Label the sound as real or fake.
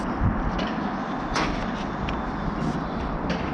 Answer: real